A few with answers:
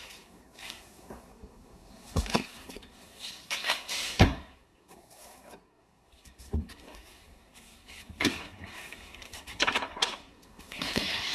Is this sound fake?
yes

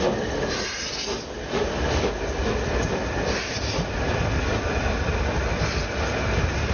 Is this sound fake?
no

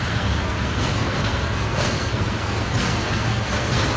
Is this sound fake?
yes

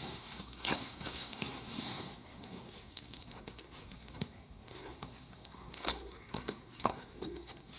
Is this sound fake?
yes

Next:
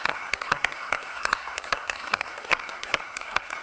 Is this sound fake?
yes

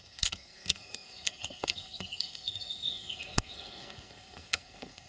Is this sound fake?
yes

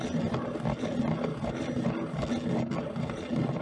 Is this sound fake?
no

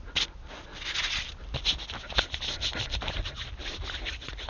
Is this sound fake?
no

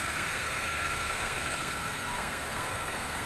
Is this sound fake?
yes